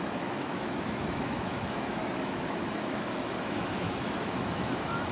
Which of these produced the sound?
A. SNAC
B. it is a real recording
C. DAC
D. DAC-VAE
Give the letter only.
D